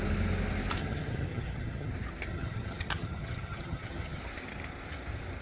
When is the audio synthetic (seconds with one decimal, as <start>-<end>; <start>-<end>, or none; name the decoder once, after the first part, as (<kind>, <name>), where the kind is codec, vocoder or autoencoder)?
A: 0.8-1.9 (vocoder, HiFi-GAN); 2.3-4.2